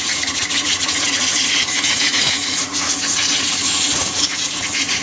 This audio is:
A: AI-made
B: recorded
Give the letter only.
A